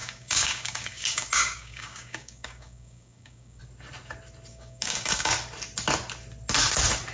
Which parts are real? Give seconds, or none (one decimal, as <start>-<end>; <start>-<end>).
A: 3.6-4.5; 5.3-7.1